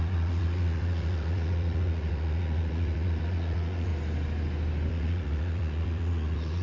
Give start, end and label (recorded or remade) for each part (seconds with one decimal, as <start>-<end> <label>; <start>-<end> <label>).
0.0-3.9 remade; 3.9-4.9 recorded; 4.9-6.6 remade